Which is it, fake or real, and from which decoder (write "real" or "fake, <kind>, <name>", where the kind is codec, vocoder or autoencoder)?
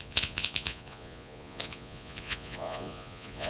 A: fake, vocoder, Vocos